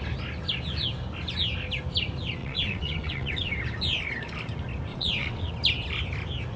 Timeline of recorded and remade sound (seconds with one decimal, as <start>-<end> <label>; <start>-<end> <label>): 0.0-2.4 recorded; 2.4-3.5 remade; 3.5-4.9 recorded; 4.9-5.5 remade; 5.5-6.6 recorded